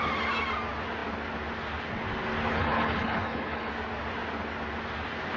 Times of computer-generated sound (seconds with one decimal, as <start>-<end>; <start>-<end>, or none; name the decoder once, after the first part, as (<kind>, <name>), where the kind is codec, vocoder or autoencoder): 2.5-3.7 (codec, HILCodec)